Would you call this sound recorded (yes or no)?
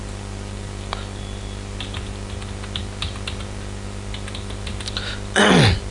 yes